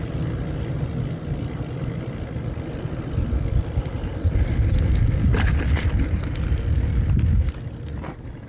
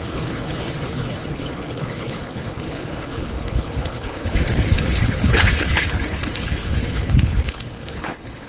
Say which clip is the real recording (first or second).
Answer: first